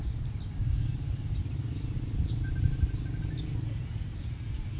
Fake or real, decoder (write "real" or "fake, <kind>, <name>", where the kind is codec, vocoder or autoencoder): real